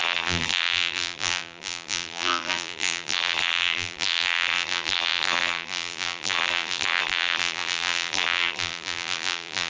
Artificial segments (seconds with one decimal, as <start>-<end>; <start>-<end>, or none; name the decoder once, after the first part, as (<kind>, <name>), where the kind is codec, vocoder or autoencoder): 0.0-9.7 (vocoder, BigVGAN v2)

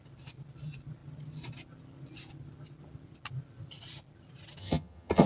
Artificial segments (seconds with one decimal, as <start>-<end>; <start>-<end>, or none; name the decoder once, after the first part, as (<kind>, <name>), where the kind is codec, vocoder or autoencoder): 4.6-5.3 (vocoder, HiFi-GAN)

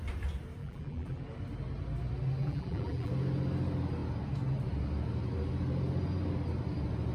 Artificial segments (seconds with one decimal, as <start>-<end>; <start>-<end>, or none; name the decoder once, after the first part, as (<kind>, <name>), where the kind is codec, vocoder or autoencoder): 0.6-1.2 (vocoder, BigVGAN v2); 2.4-3.1